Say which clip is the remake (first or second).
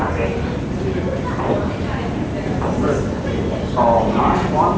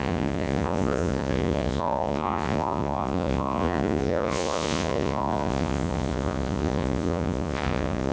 second